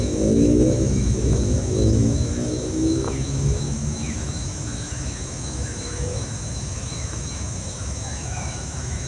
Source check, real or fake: fake